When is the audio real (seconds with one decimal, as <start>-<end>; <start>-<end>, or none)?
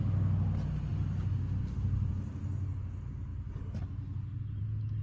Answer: 0.0-5.0